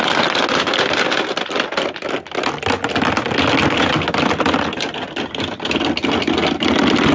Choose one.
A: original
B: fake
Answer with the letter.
A